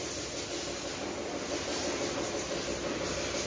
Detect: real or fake real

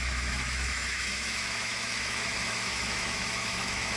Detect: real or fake fake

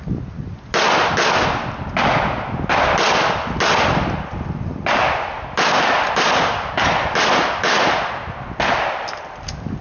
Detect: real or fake real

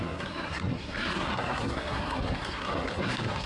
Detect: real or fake fake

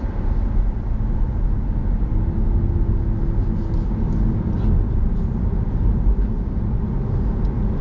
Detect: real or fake real